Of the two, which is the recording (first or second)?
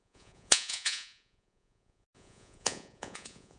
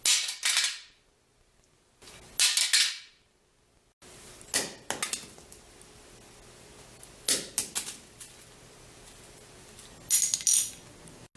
second